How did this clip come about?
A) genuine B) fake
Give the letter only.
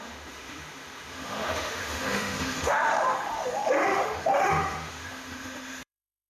B